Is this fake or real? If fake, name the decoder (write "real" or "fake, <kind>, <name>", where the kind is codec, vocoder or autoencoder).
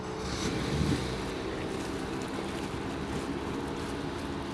real